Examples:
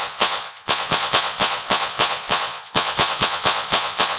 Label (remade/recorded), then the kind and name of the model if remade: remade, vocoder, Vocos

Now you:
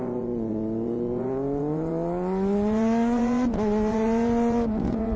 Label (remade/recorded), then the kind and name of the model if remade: remade, vocoder, Vocos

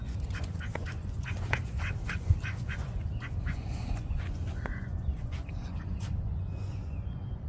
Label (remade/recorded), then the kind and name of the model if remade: remade, vocoder, Vocos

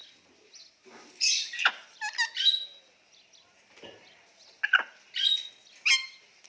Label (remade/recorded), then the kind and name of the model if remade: recorded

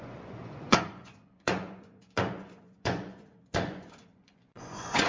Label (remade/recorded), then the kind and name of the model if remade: remade, vocoder, Vocos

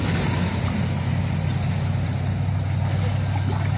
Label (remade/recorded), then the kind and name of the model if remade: recorded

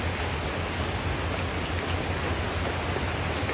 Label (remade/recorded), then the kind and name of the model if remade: recorded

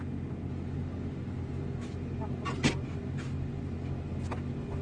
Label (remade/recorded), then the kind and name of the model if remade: recorded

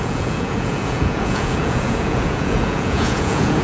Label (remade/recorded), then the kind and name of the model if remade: remade, vocoder, Vocos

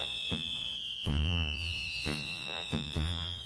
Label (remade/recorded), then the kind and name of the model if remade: remade, vocoder, Vocos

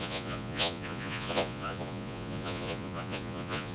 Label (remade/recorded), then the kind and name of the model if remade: remade, vocoder, Vocos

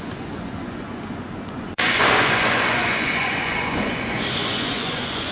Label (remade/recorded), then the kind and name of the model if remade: remade, vocoder, Vocos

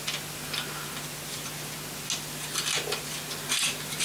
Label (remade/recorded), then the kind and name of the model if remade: recorded